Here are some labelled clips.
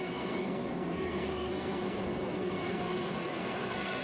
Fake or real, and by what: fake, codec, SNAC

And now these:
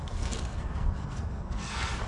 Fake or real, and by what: fake, codec, SNAC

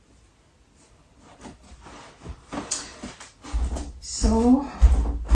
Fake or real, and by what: real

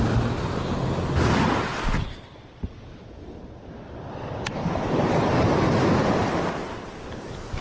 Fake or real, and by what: real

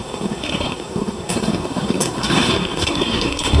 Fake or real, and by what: fake, codec, SNAC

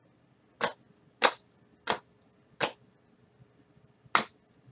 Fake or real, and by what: real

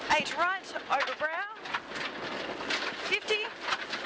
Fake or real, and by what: real